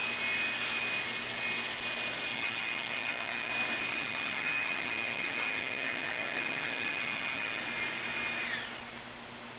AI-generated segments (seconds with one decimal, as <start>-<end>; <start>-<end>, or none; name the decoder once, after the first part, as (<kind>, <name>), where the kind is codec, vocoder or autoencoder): 2.3-3.5 (vocoder, HiFi-GAN); 3.9-7.6